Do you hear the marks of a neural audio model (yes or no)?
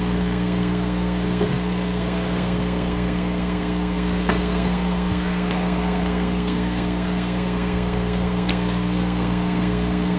yes